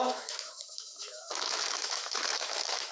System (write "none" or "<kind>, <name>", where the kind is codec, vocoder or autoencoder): autoencoder, DAC-VAE